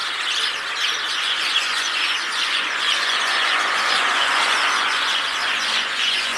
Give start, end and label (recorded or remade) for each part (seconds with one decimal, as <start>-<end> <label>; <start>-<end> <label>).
0.0-1.1 recorded; 1.1-6.4 remade